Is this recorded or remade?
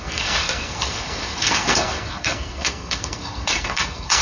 remade